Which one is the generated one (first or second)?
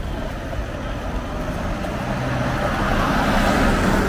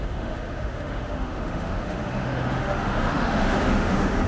second